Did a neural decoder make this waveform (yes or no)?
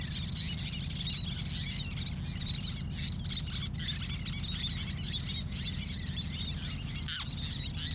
no